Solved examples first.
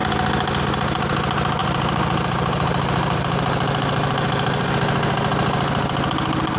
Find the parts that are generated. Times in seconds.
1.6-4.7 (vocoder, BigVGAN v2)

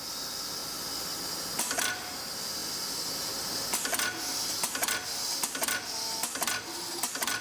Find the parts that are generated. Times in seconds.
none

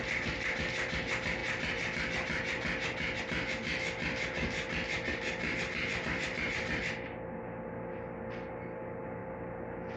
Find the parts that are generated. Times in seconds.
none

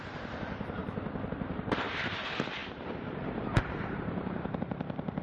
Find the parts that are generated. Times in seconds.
0.0-0.8 (vocoder, BigVGAN v2); 1.3-5.2

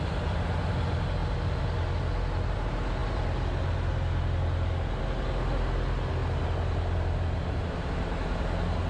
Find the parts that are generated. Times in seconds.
none

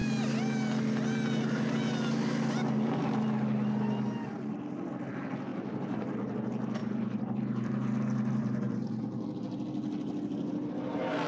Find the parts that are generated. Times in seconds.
5.5-6.0 (vocoder, BigVGAN v2); 6.8-9.0